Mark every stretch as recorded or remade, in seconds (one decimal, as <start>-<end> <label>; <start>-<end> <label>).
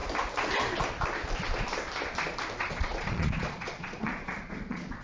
0.0-2.6 recorded; 2.6-5.0 remade